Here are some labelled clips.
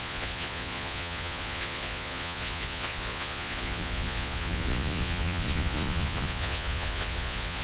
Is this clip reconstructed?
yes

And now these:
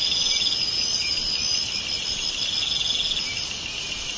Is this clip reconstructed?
no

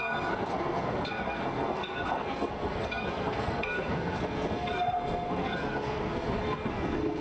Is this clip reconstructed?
yes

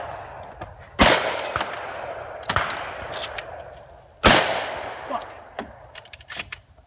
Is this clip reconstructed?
no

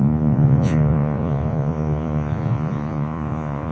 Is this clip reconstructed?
yes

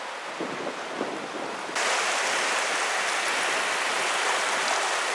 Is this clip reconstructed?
no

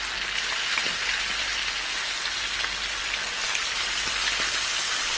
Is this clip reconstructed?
no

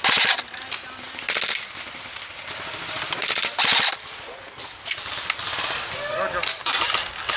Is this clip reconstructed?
no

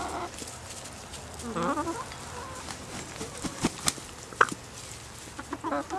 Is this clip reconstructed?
no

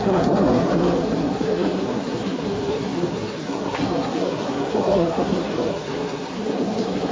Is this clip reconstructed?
yes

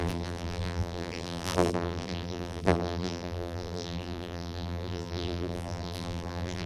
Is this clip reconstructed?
yes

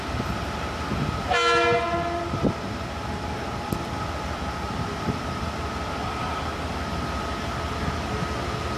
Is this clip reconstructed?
no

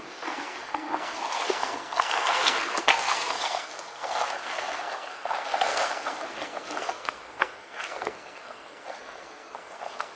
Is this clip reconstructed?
yes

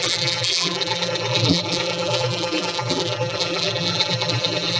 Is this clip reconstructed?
yes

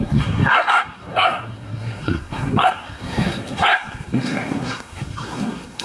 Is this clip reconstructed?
yes